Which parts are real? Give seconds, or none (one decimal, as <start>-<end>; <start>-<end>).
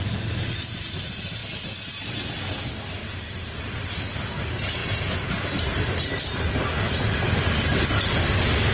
0.0-1.4; 2.2-3.0; 3.6-8.7